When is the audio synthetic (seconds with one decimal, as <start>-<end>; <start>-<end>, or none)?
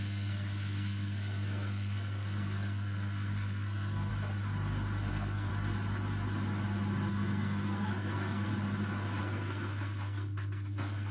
0.0-4.1; 5.1-5.5; 7.1-8.5; 9.2-11.1